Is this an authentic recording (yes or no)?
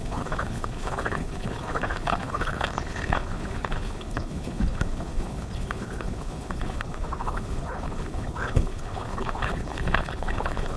no